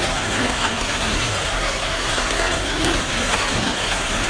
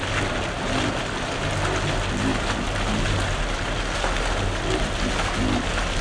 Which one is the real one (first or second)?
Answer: second